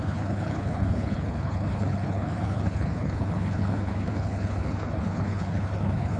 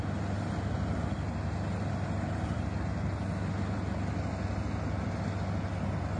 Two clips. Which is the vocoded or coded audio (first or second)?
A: first